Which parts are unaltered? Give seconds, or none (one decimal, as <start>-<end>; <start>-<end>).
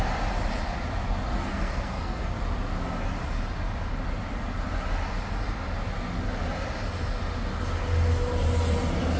0.0-1.5; 2.3-9.2